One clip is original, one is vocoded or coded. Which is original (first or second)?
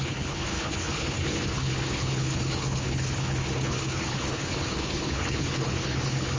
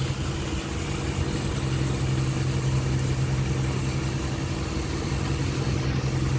second